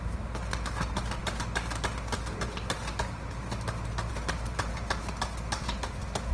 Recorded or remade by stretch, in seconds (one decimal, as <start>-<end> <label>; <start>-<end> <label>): 0.0-6.3 recorded